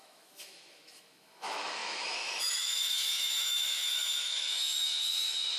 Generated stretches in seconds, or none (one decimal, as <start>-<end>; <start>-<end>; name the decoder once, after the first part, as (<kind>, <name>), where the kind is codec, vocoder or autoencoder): 0.0-5.6 (autoencoder, DAC-VAE)